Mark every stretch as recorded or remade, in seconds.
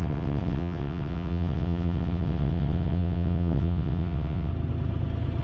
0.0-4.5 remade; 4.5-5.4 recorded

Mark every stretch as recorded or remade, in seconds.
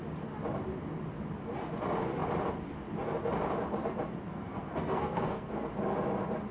0.0-4.3 recorded; 4.3-5.7 remade; 5.7-6.5 recorded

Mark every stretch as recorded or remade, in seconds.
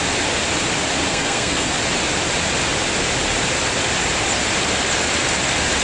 0.0-1.1 recorded; 1.1-1.7 remade; 1.7-5.8 recorded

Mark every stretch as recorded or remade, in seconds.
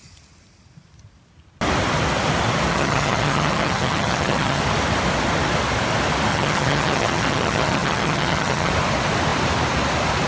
0.0-2.7 recorded; 2.7-4.6 remade; 4.6-6.3 recorded; 6.3-8.7 remade; 8.7-10.3 recorded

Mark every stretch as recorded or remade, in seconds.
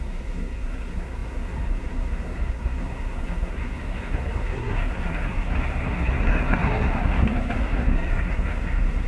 0.0-9.1 remade